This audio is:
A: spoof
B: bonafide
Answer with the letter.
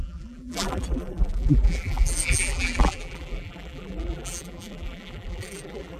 A